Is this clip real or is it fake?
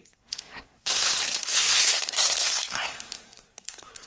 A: fake